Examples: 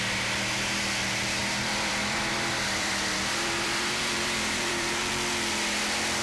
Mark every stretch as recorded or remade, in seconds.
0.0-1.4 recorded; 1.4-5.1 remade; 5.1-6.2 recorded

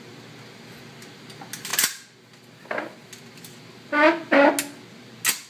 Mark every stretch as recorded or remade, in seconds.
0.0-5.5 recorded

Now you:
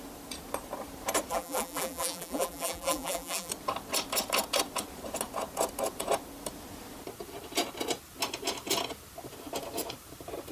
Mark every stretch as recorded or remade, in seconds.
0.0-1.3 recorded; 1.3-3.5 remade; 3.5-10.5 recorded

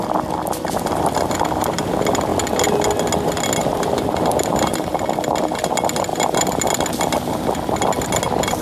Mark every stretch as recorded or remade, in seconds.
0.0-3.6 recorded; 3.6-4.9 remade; 4.9-6.1 recorded; 6.1-6.7 remade; 6.7-8.6 recorded